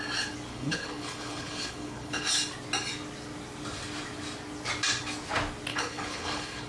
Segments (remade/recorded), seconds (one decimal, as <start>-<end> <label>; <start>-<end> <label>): 0.0-0.5 recorded; 0.5-2.3 remade; 2.3-5.7 recorded; 5.7-6.7 remade